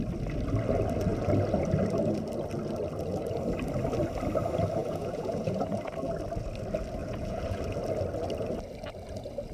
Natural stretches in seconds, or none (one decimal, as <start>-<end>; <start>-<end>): 0.0-4.8; 5.9-7.0; 7.6-9.5